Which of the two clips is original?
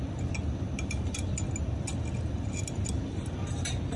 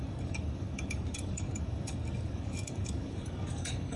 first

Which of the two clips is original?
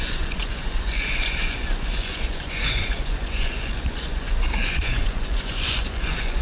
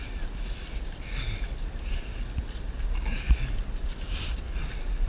second